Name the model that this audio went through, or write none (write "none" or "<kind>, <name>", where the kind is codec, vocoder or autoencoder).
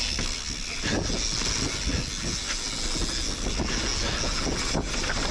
none